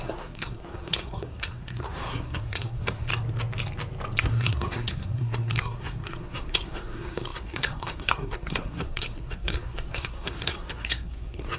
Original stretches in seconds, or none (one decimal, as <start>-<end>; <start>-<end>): 3.1-4.2